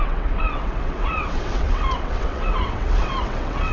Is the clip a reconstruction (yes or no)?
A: yes